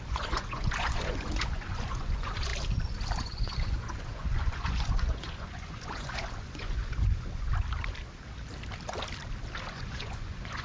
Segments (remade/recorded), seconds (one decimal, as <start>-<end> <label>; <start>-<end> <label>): 0.0-2.5 remade; 2.5-3.2 recorded; 3.2-7.5 remade; 7.5-9.7 recorded; 9.7-10.6 remade